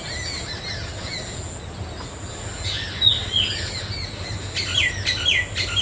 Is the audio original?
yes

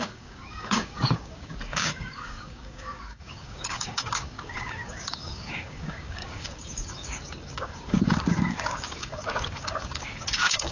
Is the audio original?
no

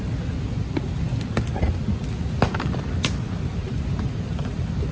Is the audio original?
yes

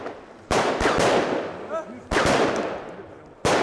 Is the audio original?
yes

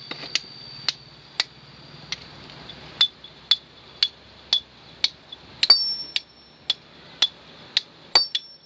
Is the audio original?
yes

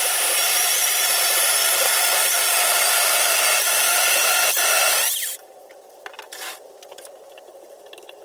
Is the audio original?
no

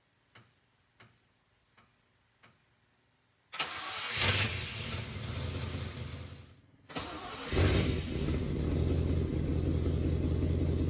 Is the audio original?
yes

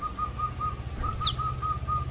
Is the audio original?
yes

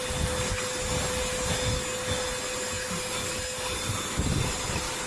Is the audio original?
yes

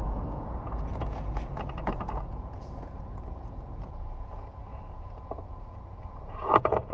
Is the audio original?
no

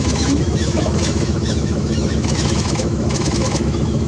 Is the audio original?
no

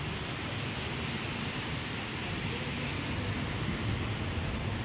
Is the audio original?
yes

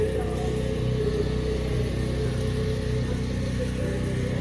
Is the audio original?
yes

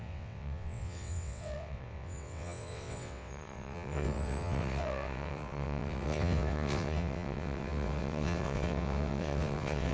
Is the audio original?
no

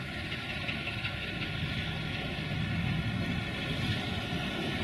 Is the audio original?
yes